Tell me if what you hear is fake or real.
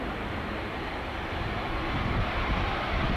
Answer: real